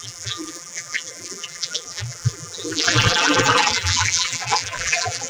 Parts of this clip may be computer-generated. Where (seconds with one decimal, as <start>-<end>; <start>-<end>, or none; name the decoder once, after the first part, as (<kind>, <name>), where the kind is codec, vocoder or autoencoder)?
0.0-5.3 (vocoder, BigVGAN v2)